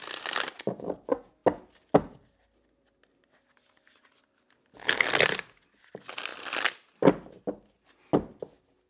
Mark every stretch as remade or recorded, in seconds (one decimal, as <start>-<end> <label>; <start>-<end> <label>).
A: 0.0-8.9 recorded